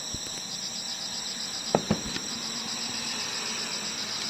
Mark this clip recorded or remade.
recorded